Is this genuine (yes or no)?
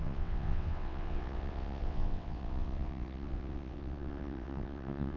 no